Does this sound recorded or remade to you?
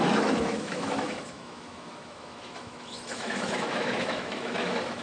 remade